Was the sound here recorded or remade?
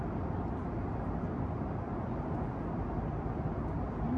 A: recorded